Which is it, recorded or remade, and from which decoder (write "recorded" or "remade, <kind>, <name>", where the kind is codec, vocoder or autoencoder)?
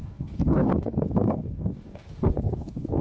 remade, codec, DAC